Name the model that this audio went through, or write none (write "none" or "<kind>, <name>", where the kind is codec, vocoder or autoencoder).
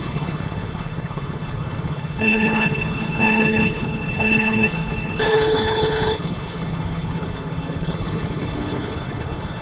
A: codec, HILCodec